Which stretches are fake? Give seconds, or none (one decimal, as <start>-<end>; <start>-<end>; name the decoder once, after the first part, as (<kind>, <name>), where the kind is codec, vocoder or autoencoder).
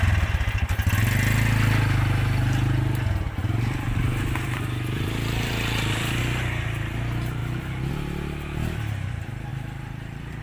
3.4-6.2 (vocoder, BigVGAN v2); 7.4-7.9; 9.5-10.4